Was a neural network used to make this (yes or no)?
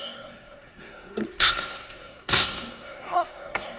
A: yes